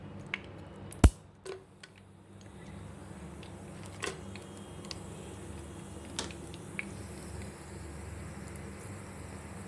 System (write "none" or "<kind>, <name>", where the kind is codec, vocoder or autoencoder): none